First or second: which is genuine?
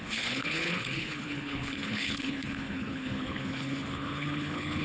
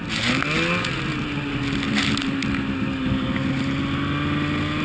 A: second